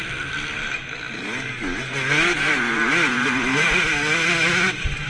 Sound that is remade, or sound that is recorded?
recorded